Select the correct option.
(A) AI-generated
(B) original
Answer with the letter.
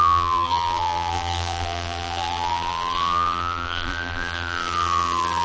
A